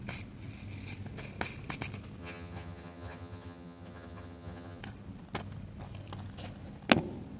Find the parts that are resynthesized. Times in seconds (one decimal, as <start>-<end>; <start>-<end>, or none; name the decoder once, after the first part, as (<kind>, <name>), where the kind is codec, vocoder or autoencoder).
2.2-4.8 (vocoder, HiFi-GAN)